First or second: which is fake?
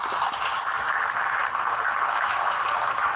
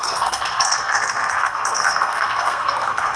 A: second